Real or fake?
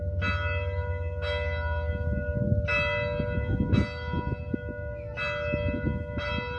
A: real